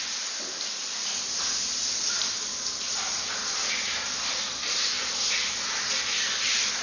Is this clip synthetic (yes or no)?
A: no